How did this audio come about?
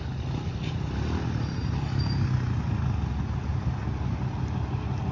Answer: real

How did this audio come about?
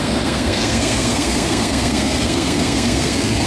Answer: fake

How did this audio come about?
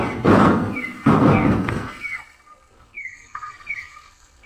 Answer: fake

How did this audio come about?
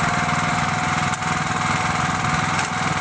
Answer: real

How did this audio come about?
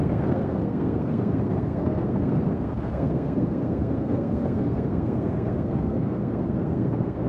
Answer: fake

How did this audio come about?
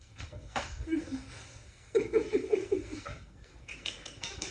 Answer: fake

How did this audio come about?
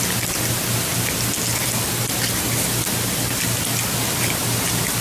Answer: real